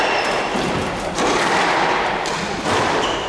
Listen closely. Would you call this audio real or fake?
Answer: real